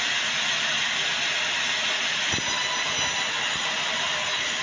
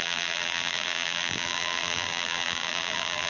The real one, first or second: first